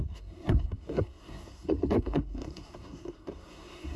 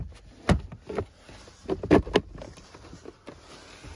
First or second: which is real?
second